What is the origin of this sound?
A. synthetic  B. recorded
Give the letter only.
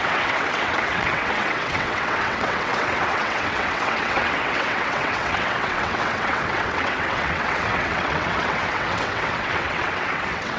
A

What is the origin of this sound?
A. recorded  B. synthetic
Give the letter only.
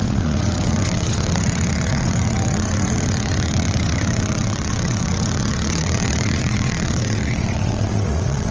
B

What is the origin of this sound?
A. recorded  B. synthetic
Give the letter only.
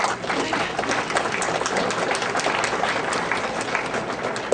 A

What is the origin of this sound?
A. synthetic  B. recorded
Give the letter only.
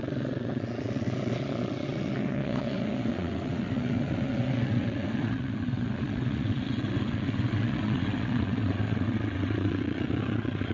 A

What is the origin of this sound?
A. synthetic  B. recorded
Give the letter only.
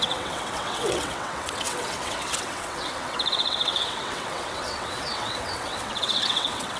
A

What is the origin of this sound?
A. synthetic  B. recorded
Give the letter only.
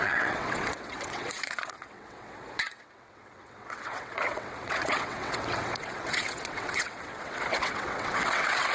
A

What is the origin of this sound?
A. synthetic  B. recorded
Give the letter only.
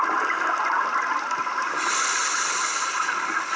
B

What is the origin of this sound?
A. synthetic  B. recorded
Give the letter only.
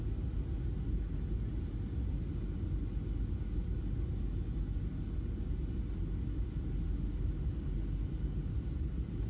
B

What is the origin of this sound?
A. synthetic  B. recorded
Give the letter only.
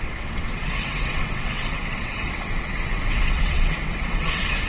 A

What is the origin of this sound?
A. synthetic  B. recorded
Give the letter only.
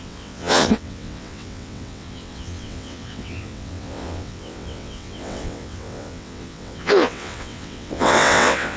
A